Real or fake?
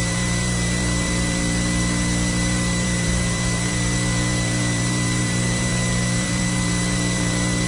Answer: fake